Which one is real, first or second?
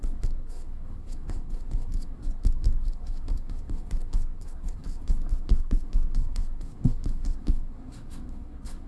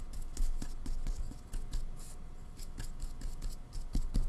second